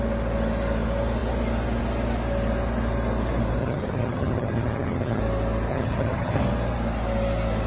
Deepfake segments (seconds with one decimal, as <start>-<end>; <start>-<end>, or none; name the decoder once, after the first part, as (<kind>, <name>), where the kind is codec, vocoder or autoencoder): 3.6-5.2 (vocoder, HiFi-GAN); 5.7-6.4